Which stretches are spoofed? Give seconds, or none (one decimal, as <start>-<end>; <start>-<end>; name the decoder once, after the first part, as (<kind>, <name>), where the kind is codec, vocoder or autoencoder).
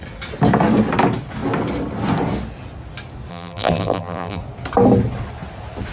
3.3-4.4 (vocoder, BigVGAN v2)